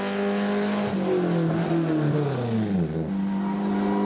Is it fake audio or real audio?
real